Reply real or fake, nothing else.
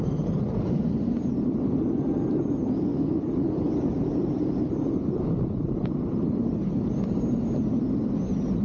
real